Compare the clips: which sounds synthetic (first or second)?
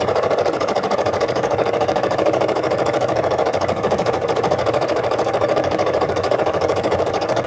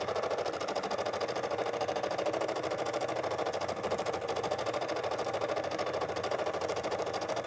first